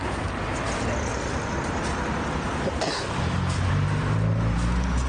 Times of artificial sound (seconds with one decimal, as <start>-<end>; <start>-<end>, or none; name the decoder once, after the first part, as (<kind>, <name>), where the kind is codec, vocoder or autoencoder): none